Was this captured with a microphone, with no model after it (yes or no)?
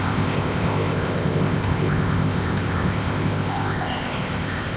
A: no